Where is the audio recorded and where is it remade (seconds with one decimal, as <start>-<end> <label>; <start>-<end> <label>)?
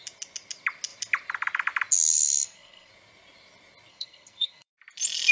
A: 0.0-2.1 recorded; 2.1-2.9 remade; 2.9-3.9 recorded; 3.9-4.7 remade; 4.7-5.3 recorded